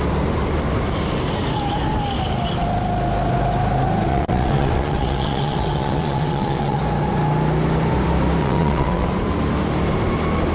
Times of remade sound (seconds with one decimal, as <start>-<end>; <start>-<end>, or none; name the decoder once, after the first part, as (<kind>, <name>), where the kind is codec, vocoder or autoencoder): 4.1-6.8 (vocoder, WaveNeXt); 8.4-9.1

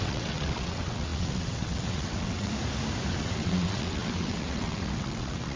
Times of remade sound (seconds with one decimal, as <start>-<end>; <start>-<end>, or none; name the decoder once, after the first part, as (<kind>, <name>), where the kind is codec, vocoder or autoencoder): 0.0-2.5 (vocoder, WaveNeXt); 3.1-5.6

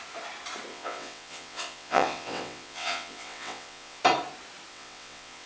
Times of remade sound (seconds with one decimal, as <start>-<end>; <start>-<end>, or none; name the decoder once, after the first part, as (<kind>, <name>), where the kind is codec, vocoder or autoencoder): 0.7-4.0 (vocoder, WaveNeXt); 4.7-5.5

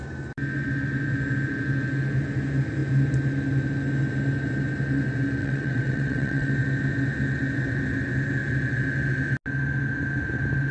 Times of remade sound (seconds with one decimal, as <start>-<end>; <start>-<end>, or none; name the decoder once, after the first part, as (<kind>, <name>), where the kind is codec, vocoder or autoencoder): 5.4-6.5 (vocoder, WaveNeXt)